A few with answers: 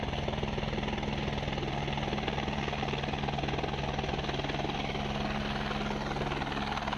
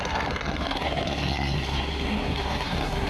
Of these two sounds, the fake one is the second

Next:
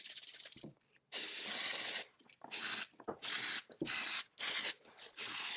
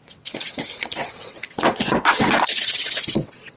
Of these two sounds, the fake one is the second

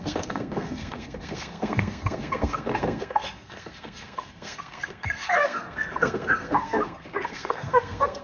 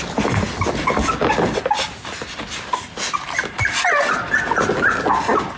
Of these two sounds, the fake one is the first